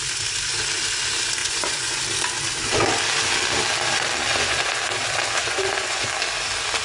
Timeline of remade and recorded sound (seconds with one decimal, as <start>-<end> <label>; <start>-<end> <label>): 0.0-1.4 recorded; 1.4-2.0 remade; 2.0-4.3 recorded; 4.3-4.8 remade; 4.8-5.4 recorded; 5.4-6.1 remade; 6.1-6.8 recorded